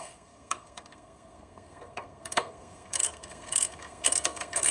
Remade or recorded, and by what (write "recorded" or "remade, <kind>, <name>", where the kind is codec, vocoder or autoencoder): remade, codec, SNAC